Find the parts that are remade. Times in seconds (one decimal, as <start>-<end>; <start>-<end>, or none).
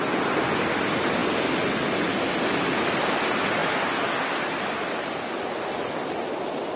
none